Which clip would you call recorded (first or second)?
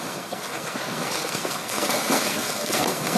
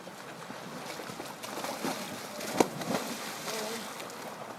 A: second